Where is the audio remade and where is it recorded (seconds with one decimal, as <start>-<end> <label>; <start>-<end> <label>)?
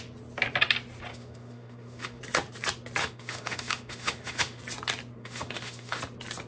0.0-1.1 recorded; 1.1-2.2 remade; 2.2-3.0 recorded; 3.0-4.6 remade; 4.6-5.2 recorded; 5.2-6.0 remade; 6.0-6.5 recorded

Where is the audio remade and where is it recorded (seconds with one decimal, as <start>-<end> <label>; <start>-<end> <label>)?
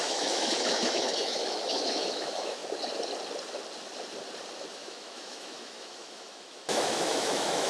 0.0-2.6 remade; 2.6-4.7 recorded; 4.7-7.7 remade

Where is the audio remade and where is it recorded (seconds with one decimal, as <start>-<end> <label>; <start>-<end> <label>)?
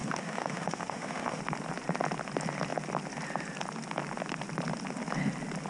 0.0-1.4 remade; 1.4-5.7 recorded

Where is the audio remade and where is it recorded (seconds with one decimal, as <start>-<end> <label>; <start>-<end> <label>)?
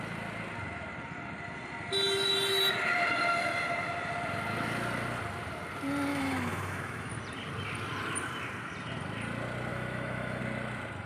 0.0-6.1 recorded; 6.1-7.1 remade; 7.1-9.7 recorded; 9.7-10.4 remade; 10.4-11.1 recorded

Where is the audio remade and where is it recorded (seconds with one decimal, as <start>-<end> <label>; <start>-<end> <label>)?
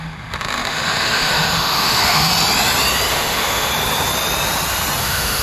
0.0-2.3 remade; 2.3-3.1 recorded; 3.1-3.7 remade; 3.7-5.0 recorded; 5.0-5.4 remade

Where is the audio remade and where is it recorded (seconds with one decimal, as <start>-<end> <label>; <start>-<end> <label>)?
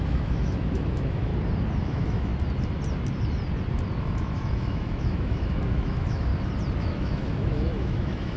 0.0-1.3 remade; 1.3-1.8 recorded; 1.8-2.3 remade; 2.3-4.0 recorded; 4.0-6.3 remade; 6.3-6.8 recorded; 6.8-8.4 remade